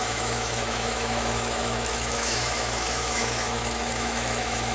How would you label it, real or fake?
fake